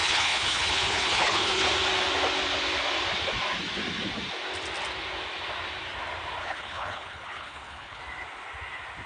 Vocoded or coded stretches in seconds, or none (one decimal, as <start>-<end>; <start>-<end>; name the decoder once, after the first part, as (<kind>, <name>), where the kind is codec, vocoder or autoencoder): 0.0-1.7 (codec, HILCodec); 6.4-8.0